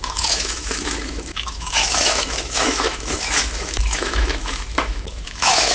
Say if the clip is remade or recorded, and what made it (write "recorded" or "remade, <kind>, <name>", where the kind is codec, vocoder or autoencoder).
remade, autoencoder, DAC-VAE